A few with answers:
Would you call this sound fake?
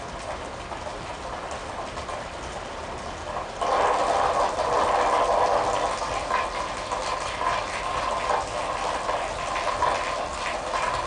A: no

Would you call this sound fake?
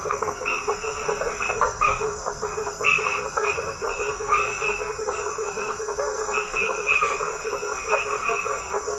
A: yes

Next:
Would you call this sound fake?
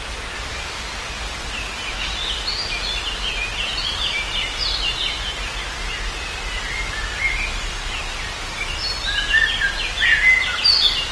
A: no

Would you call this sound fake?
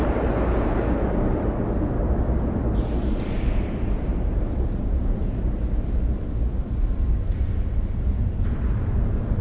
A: yes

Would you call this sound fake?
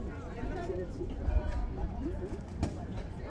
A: yes